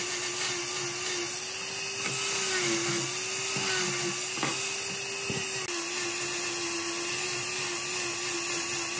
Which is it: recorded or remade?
recorded